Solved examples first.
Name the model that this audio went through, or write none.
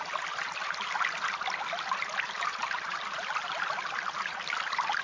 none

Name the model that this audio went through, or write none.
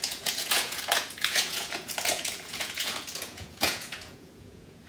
vocoder, Vocos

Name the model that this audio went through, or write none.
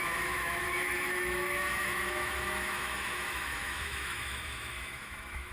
autoencoder, DAC-VAE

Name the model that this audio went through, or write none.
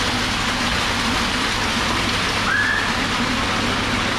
none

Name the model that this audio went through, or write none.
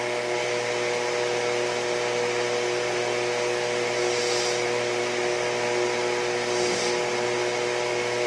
none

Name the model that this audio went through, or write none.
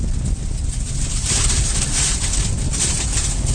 none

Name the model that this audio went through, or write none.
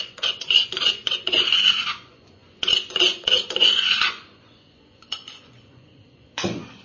vocoder, Vocos